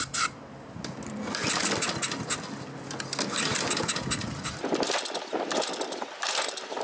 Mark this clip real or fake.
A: real